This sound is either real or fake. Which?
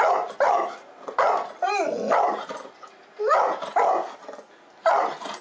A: real